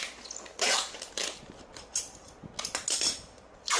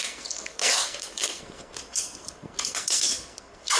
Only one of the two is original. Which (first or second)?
first